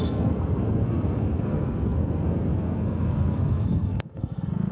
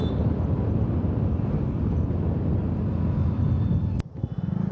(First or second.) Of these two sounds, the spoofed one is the first